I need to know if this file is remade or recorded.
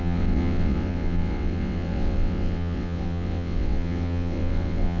remade